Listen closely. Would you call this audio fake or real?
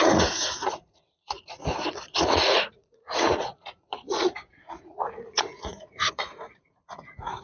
fake